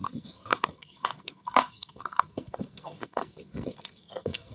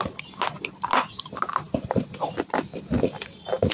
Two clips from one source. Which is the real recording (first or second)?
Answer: second